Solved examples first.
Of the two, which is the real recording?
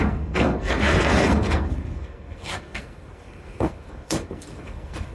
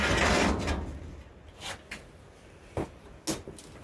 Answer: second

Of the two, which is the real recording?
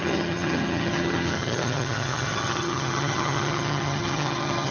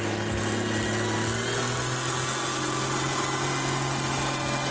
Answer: second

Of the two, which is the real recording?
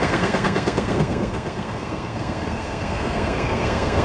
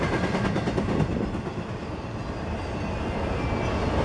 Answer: second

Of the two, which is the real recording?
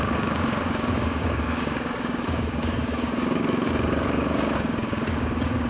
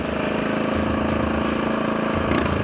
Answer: second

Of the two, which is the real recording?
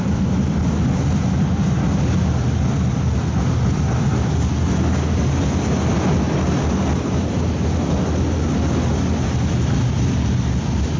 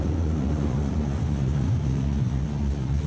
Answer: first